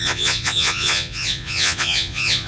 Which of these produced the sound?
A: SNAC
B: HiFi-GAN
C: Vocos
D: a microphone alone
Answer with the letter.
C